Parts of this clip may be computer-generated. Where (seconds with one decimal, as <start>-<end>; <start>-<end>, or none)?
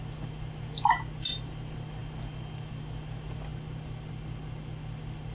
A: none